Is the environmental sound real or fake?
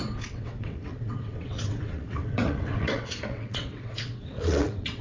fake